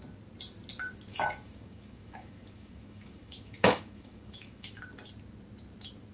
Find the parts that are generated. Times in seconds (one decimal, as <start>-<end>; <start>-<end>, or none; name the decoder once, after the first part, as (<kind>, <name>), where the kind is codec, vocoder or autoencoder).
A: 1.1-4.8 (autoencoder, DAC-VAE)